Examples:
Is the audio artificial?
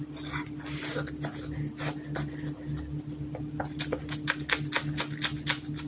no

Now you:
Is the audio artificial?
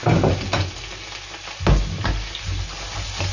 no